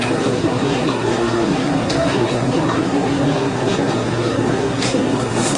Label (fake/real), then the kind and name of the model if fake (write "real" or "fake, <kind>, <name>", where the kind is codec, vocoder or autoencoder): fake, codec, SNAC